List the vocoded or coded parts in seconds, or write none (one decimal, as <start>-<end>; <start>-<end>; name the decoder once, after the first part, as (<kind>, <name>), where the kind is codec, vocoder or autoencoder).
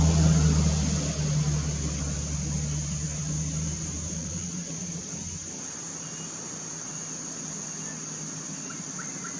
4.2-5.0 (vocoder, Vocos)